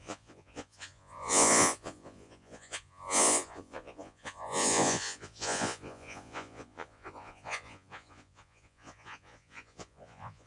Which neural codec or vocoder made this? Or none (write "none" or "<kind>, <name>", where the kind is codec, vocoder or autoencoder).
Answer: vocoder, Vocos